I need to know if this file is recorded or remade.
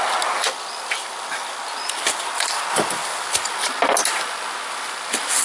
recorded